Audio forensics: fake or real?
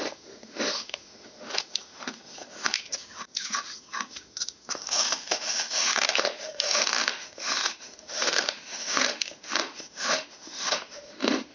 fake